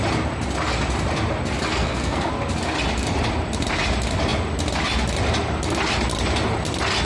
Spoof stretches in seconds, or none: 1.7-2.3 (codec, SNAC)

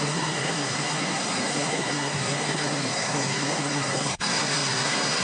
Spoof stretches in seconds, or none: 0.0-5.2 (codec, SNAC)